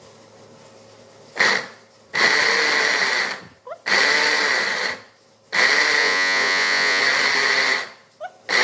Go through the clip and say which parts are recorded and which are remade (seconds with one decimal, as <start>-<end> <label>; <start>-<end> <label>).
0.0-6.0 recorded; 6.0-7.0 remade; 7.0-8.6 recorded

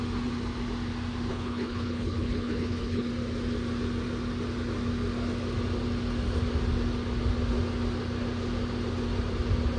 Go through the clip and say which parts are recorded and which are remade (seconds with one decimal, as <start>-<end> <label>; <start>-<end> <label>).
0.0-1.3 recorded; 1.3-3.1 remade; 3.1-9.8 recorded